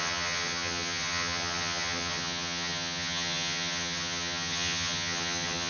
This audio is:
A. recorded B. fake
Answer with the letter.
B